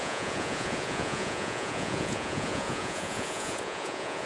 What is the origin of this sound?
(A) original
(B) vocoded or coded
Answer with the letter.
B